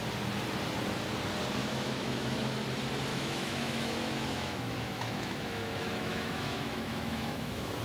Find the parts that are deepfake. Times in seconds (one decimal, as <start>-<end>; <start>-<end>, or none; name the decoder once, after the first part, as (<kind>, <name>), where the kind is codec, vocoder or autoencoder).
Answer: 1.6-2.4 (autoencoder, DAC-VAE); 3.1-7.8